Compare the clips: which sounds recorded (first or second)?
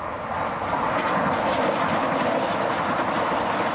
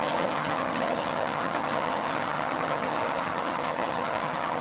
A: first